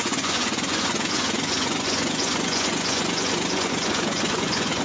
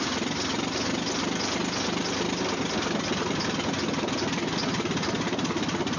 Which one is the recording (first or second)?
second